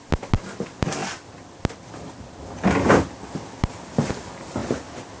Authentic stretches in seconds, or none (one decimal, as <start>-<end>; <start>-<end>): 0.0-5.2